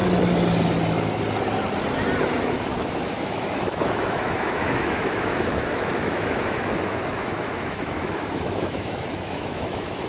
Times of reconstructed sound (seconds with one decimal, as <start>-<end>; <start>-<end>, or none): 2.4-10.1